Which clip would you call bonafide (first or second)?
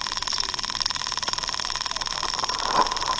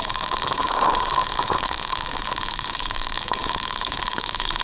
first